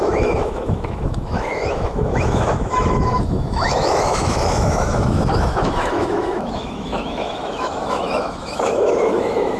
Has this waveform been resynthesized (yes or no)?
yes